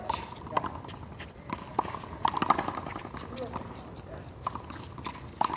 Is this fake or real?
real